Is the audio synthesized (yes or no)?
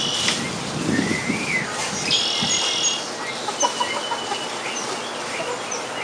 no